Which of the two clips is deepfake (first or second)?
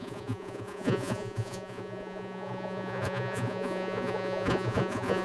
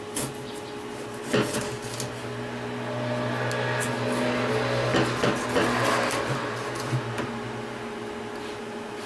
first